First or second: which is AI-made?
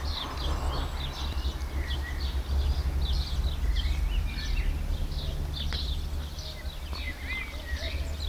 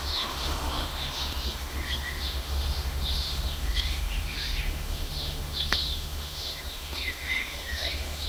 second